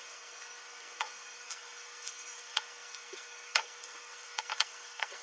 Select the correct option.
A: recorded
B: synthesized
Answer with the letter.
B